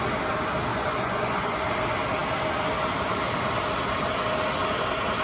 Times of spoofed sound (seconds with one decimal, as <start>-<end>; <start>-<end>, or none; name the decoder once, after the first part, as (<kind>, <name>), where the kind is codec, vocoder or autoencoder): 0.7-1.6 (vocoder, Vocos)